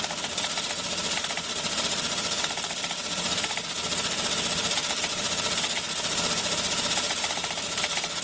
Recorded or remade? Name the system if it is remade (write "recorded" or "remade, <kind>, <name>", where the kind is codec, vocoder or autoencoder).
recorded